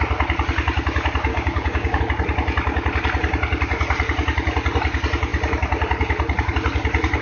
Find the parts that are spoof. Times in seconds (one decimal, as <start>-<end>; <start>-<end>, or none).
1.3-2.0